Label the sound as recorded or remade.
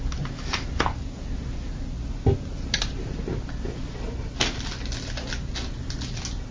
recorded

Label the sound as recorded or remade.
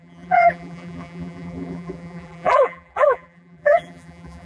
remade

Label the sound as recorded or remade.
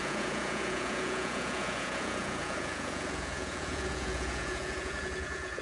remade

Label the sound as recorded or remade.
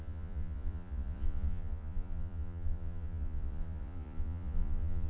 remade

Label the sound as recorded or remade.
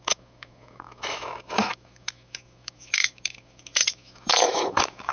remade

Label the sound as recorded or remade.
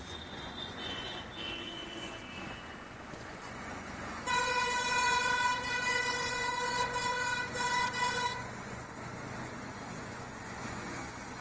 remade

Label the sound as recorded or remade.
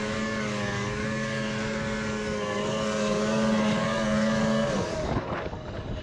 remade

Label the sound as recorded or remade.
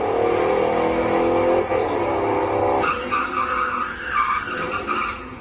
recorded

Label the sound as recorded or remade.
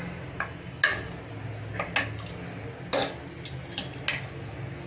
recorded